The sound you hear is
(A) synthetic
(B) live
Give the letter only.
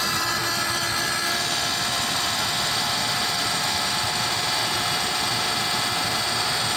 A